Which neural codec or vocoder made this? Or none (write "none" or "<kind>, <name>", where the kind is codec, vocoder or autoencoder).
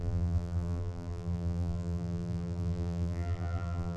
vocoder, BigVGAN v2